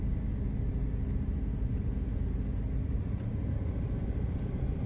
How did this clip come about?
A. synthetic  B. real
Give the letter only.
B